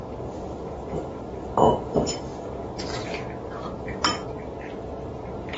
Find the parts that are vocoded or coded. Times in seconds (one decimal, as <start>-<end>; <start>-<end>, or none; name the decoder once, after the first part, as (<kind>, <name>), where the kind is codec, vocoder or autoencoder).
2.3-2.8 (vocoder, BigVGAN v2); 4.0-5.6